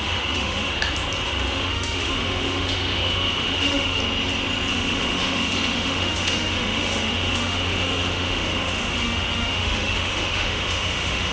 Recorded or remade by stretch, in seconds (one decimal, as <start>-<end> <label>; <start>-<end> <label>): 0.0-0.8 remade; 0.8-1.3 recorded; 1.3-4.0 remade; 4.0-4.7 recorded; 4.7-11.3 remade